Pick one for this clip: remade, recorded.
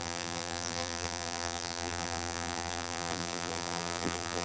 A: remade